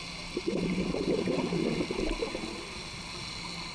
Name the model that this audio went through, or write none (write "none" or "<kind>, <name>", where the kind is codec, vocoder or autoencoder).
none